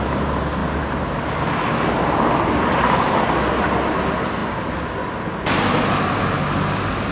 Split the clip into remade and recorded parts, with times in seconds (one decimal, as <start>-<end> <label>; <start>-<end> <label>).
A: 0.0-7.1 recorded